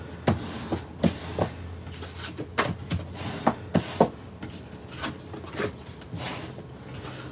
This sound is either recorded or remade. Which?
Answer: recorded